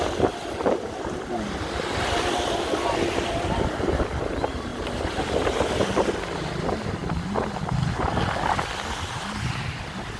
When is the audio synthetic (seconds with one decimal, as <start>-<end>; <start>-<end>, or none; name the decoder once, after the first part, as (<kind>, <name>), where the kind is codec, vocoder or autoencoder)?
none